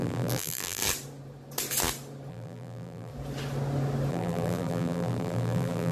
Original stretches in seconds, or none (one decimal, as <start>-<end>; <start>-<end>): 0.8-2.3; 3.1-4.1